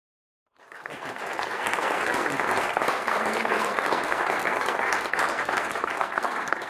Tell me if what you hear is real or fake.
fake